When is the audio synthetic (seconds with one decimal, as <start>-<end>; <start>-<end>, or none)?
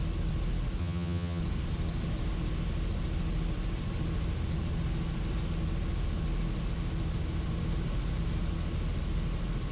0.8-1.4